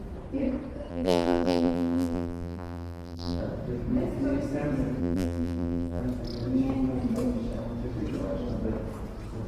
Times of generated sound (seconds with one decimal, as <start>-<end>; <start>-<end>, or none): 0.9-3.4; 5.0-6.0